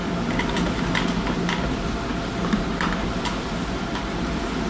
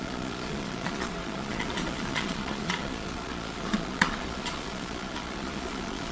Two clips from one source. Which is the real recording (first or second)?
first